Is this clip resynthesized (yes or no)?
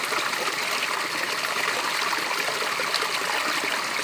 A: no